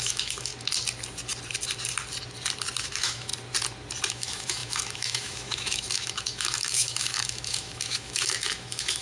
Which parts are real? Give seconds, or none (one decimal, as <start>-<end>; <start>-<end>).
0.5-2.8; 3.3-4.1